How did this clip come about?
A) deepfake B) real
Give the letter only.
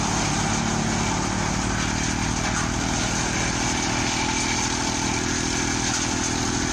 B